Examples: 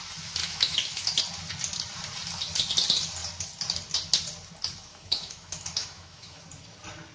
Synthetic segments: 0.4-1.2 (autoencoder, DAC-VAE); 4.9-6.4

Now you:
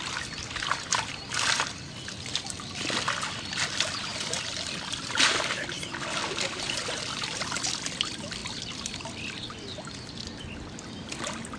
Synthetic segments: none

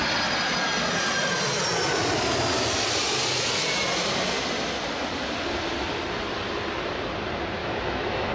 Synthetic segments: 7.6-8.3 (autoencoder, DAC-VAE)

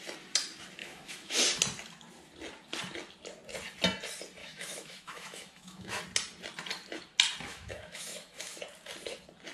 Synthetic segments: 0.8-1.4 (autoencoder, DAC-VAE); 4.4-6.0; 7.5-8.6

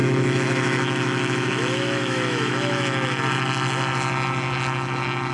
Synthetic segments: 0.0-3.2 (autoencoder, DAC-VAE)

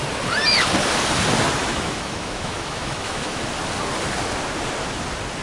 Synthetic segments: 1.6-3.5 (autoencoder, DAC-VAE)

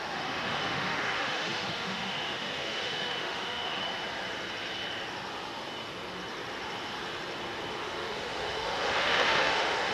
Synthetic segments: 0.0-3.9 (autoencoder, DAC-VAE); 7.8-9.9

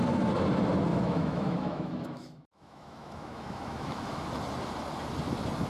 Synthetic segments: 0.9-4.3 (autoencoder, DAC-VAE)